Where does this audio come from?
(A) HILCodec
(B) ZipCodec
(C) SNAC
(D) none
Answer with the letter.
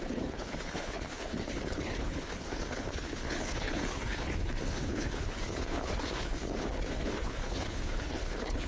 A